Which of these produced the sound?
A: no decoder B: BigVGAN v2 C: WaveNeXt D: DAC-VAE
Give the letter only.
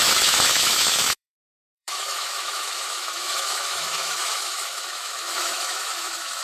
D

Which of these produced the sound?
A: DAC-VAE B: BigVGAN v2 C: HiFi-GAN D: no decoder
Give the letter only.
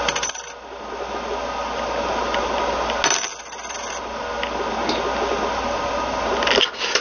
D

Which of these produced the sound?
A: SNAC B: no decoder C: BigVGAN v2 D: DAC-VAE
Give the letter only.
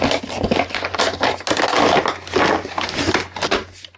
B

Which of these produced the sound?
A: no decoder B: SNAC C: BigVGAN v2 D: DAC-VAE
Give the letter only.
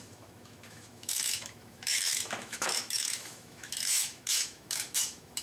D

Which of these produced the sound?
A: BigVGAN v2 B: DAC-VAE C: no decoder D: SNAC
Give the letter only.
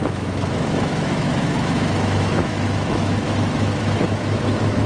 B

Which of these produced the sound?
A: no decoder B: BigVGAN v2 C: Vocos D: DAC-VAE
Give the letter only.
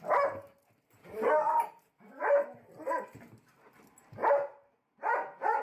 A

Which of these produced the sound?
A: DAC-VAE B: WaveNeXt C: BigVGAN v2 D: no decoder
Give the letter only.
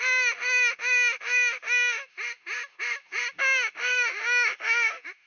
A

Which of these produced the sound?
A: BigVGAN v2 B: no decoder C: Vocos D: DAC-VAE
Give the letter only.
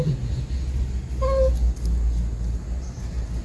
B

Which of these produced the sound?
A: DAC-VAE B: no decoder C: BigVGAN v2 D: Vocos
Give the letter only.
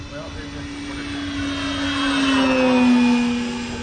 B